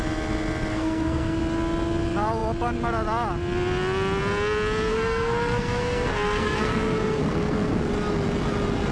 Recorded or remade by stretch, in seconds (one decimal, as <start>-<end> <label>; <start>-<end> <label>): 0.0-0.7 recorded; 0.7-1.4 remade; 1.4-4.9 recorded; 4.9-7.9 remade; 7.9-8.9 recorded